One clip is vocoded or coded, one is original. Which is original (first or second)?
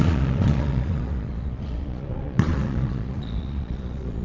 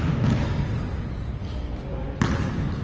second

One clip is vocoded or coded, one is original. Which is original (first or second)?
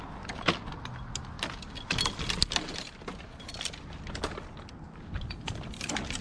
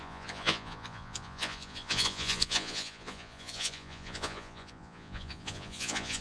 first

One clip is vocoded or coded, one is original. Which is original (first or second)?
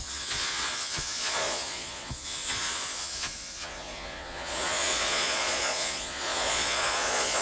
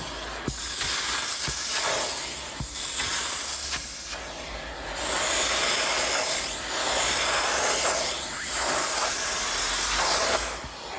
second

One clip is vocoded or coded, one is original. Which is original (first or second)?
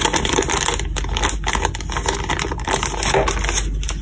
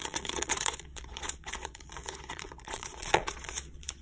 first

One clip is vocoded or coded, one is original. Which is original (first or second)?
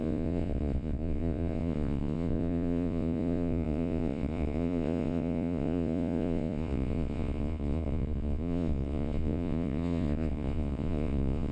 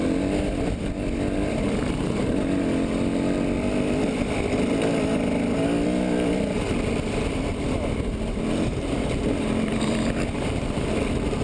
second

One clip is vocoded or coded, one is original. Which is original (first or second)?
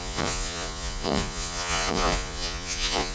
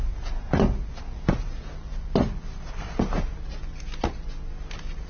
second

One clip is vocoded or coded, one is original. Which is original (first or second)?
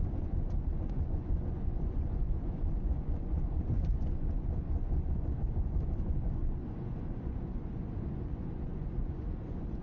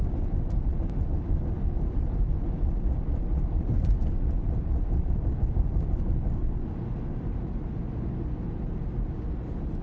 second